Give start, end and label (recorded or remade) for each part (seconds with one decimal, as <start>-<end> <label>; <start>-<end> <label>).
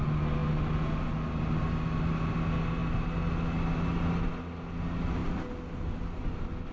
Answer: 0.0-6.7 recorded